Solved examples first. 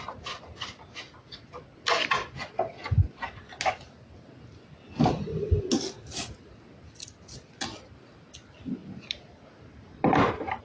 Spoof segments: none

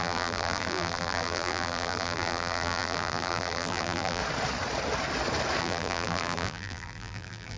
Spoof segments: 0.0-4.2 (vocoder, BigVGAN v2); 5.6-7.6